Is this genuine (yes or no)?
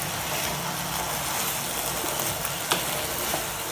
yes